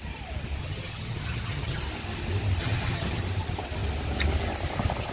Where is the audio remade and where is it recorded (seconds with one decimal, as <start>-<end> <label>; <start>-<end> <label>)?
0.0-0.6 recorded; 0.6-1.8 remade; 1.8-2.6 recorded; 2.6-3.2 remade; 3.2-5.1 recorded